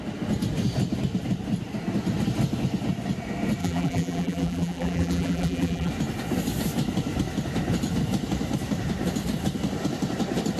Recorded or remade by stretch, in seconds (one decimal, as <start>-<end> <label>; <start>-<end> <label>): 0.0-3.6 recorded; 3.6-5.9 remade; 5.9-10.6 recorded